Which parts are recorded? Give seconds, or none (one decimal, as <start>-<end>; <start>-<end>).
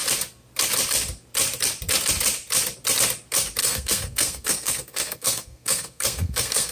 0.0-3.6